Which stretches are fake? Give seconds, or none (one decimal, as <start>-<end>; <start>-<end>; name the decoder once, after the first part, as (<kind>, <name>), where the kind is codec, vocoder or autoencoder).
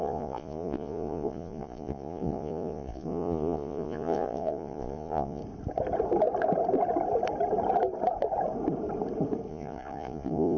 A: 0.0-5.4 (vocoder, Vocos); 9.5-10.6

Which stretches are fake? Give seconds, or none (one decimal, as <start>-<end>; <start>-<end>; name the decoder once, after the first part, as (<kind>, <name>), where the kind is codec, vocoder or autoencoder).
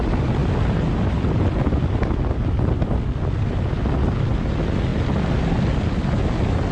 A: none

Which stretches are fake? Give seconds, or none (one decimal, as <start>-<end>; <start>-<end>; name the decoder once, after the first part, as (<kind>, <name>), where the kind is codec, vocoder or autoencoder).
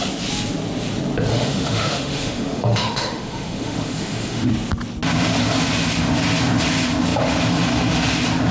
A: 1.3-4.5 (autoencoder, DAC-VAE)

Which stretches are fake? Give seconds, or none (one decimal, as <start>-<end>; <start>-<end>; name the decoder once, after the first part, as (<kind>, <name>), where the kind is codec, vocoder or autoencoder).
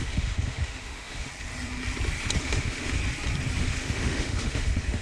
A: 0.0-1.3 (autoencoder, DAC-VAE); 2.4-3.0; 3.6-5.0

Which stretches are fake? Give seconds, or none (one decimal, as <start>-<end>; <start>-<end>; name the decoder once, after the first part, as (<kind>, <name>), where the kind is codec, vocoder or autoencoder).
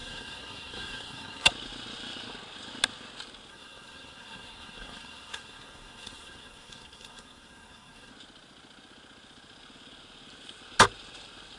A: 0.0-1.5 (codec, SNAC); 3.5-8.1